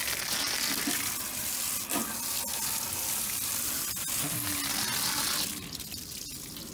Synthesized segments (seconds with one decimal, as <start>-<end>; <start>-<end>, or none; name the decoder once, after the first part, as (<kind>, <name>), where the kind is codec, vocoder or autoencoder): none